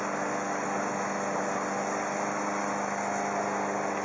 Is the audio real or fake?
real